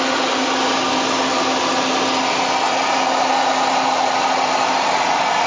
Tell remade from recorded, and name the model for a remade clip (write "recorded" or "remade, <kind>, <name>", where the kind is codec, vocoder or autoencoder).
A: recorded